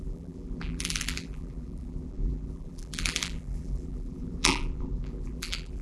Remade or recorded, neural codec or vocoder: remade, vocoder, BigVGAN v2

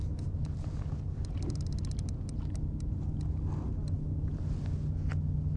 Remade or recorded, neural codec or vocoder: recorded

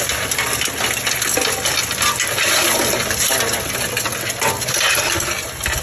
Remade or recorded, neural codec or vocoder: recorded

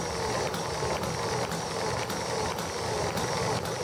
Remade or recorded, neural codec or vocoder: recorded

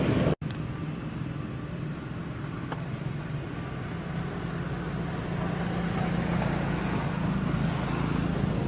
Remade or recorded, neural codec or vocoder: recorded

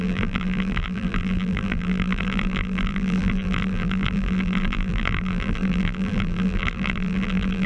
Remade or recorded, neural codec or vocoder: remade, vocoder, BigVGAN v2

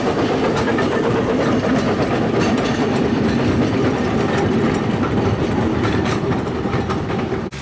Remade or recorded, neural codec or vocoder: remade, vocoder, BigVGAN v2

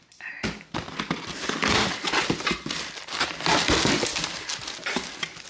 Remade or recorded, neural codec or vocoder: recorded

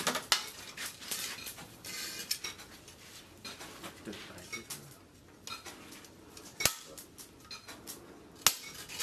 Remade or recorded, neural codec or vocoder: recorded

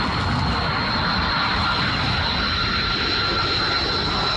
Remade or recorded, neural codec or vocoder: recorded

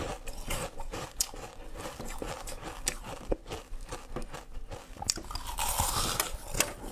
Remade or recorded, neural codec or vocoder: recorded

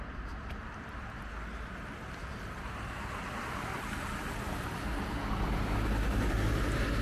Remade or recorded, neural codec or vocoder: recorded